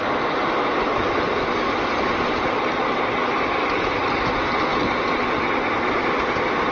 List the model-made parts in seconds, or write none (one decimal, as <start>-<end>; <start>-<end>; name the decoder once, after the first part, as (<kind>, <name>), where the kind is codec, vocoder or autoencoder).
none